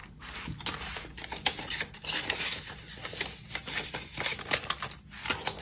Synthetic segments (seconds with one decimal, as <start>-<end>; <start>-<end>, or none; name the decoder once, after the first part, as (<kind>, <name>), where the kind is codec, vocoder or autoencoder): none